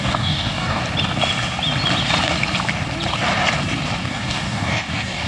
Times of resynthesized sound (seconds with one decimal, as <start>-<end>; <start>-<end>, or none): 0.0-0.8; 4.0-5.3